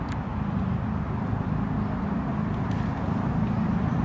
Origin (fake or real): real